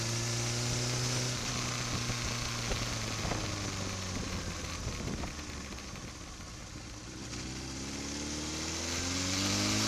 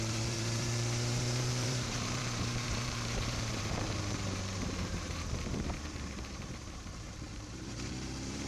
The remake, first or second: second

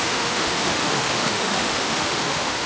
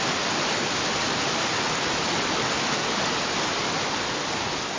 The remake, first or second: first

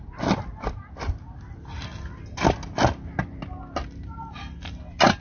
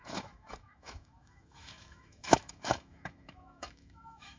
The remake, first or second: second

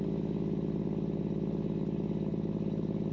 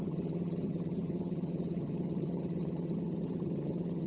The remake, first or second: second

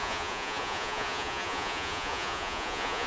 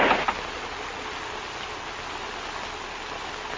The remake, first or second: first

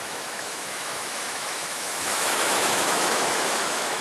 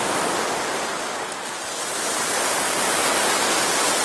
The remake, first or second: first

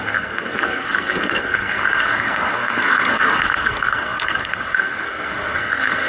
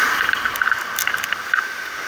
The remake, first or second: first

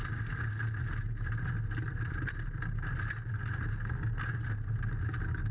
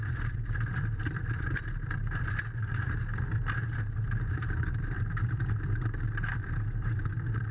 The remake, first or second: second